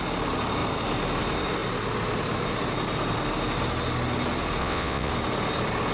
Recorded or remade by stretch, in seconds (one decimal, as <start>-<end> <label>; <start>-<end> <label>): 0.0-4.6 recorded; 4.6-5.1 remade; 5.1-5.9 recorded